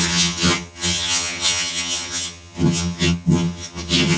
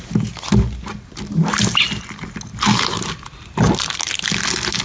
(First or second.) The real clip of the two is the second